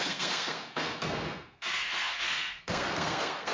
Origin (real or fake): fake